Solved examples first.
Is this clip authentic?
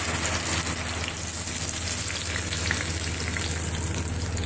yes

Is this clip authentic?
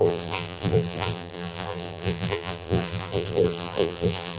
no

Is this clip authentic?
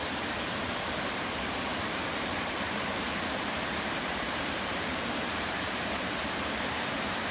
no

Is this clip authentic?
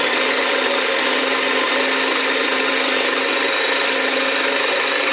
yes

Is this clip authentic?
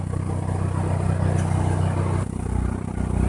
yes